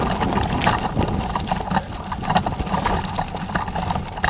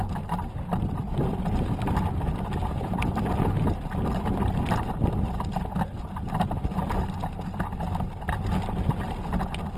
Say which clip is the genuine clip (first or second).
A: second